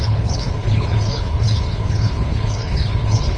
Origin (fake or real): fake